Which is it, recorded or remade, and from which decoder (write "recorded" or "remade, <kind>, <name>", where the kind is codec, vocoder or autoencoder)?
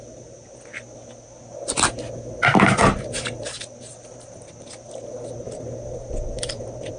recorded